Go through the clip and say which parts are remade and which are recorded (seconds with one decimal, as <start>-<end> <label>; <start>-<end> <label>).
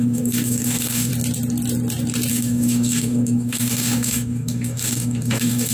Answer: 0.0-1.1 remade; 1.1-2.3 recorded; 2.3-5.7 remade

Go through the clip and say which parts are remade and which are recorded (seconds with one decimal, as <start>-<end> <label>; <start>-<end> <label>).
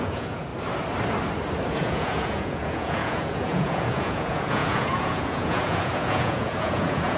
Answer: 0.0-0.5 remade; 0.5-1.7 recorded; 1.7-7.2 remade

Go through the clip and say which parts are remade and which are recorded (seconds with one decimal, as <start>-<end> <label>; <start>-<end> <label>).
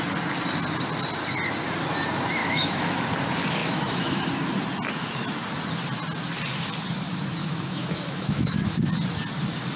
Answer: 0.0-2.4 recorded; 2.4-3.0 remade; 3.0-3.6 recorded; 3.6-4.3 remade; 4.3-7.4 recorded; 7.4-8.7 remade; 8.7-9.8 recorded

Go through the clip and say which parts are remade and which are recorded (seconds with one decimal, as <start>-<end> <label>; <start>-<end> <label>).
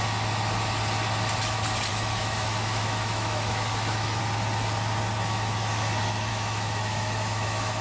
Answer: 0.0-1.9 recorded; 1.9-4.2 remade; 4.2-6.3 recorded; 6.3-7.8 remade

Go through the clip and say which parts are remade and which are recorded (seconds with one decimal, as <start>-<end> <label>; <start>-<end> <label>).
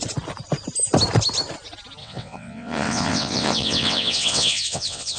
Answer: 0.0-2.0 recorded; 2.0-5.2 remade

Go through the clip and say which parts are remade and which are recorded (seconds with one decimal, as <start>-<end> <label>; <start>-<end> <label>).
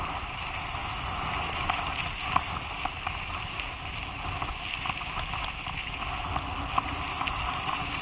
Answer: 0.0-8.0 recorded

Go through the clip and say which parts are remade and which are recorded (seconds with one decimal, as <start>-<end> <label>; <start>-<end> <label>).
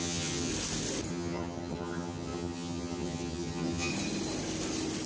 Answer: 0.0-0.5 remade; 0.5-1.1 recorded; 1.1-3.9 remade; 3.9-5.1 recorded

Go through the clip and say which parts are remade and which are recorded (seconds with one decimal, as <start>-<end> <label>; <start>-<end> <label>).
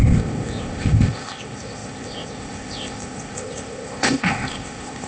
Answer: 0.0-5.1 remade